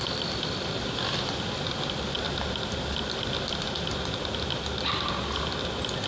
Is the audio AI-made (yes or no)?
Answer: no